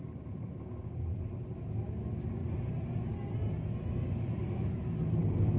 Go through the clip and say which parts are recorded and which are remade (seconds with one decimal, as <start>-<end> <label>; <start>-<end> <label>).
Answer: 0.0-5.6 recorded

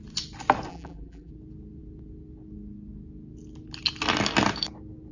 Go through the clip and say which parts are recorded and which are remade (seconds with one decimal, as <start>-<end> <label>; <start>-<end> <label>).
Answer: 0.0-0.7 recorded; 0.7-1.3 remade; 1.3-5.1 recorded

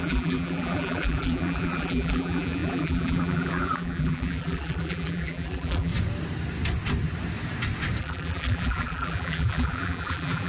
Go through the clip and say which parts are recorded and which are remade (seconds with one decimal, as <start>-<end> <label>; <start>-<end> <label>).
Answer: 0.0-5.9 remade; 5.9-8.0 recorded; 8.0-10.5 remade

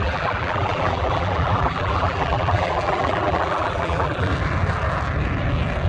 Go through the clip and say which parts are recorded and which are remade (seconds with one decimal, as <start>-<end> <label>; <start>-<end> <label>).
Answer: 0.0-4.3 remade; 4.3-5.9 recorded

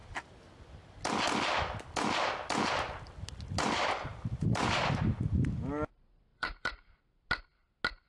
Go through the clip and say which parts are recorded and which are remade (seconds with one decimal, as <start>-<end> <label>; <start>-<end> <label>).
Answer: 0.0-4.1 recorded; 4.1-5.4 remade; 5.4-6.3 recorded; 6.3-7.0 remade; 7.0-8.1 recorded

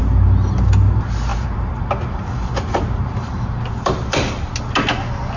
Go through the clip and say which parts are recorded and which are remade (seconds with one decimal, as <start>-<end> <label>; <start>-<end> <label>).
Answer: 0.0-1.3 recorded; 1.3-4.5 remade; 4.5-5.4 recorded